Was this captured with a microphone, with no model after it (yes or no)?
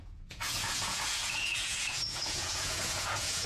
no